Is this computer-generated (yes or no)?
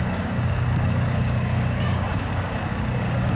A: yes